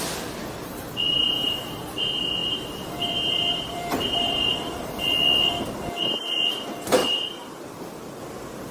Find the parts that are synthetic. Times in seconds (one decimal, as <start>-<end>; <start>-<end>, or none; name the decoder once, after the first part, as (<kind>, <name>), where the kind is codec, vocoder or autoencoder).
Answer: 2.4-5.5 (vocoder, BigVGAN v2); 7.0-8.2